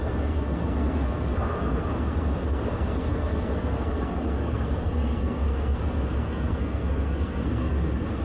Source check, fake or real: fake